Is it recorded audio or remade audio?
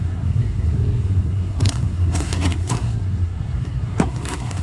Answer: remade